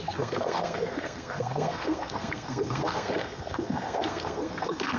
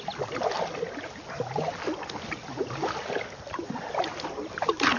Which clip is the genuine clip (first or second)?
second